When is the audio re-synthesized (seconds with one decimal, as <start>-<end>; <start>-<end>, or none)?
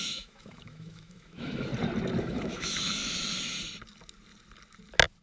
0.0-1.7; 2.2-3.0